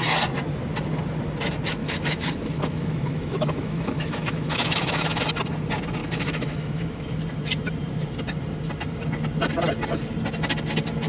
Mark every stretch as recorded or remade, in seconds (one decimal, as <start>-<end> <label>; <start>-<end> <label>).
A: 0.0-1.8 recorded; 1.8-5.2 remade; 5.2-6.0 recorded; 6.0-7.2 remade; 7.2-11.1 recorded